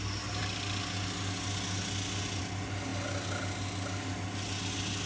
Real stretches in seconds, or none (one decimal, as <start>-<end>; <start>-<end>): 0.0-5.1